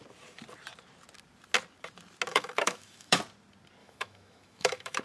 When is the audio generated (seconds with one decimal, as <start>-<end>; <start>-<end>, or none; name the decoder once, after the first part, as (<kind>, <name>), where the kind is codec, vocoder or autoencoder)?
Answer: 2.3-3.2 (autoencoder, DAC-VAE); 3.8-5.0